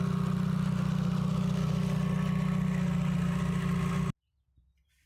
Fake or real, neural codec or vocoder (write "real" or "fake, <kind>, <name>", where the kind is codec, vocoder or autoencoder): real